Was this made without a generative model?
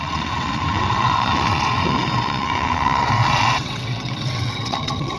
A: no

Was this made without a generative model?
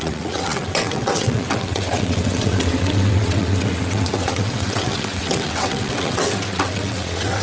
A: no